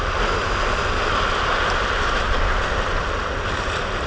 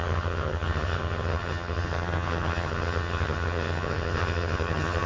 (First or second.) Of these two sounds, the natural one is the first